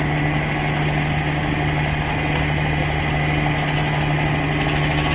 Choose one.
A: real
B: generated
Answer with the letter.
A